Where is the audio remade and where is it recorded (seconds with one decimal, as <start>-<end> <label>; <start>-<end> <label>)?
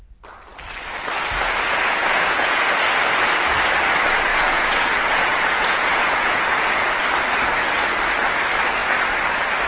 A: 0.0-2.0 recorded; 2.0-2.8 remade; 2.8-4.3 recorded; 4.3-7.0 remade; 7.0-9.7 recorded